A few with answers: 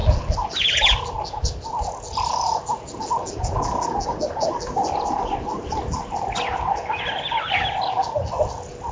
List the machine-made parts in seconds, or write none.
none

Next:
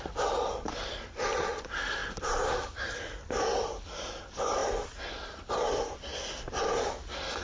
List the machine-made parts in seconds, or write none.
none

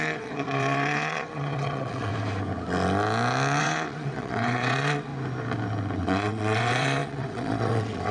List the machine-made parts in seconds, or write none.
0.0-2.1 (vocoder, WaveNeXt); 3.6-5.1; 6.0-8.1

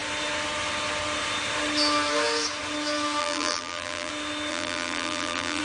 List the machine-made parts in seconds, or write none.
3.2-4.1 (vocoder, BigVGAN v2); 4.5-5.6

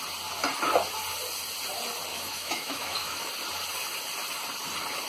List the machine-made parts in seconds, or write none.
2.1-3.3 (autoencoder, DAC-VAE)